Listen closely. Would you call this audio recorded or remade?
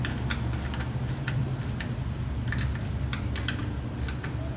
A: recorded